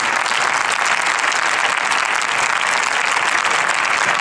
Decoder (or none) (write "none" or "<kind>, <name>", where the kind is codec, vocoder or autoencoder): none